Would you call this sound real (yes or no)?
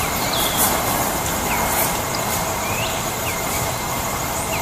no